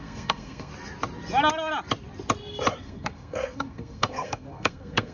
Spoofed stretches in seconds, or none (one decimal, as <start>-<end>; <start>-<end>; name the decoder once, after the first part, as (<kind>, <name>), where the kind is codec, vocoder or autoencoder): 0.0-0.7 (codec, SNAC); 2.7-5.1